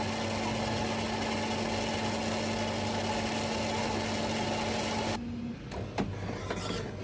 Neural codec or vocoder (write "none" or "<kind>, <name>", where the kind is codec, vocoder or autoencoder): none